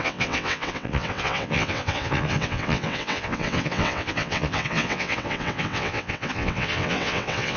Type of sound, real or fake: fake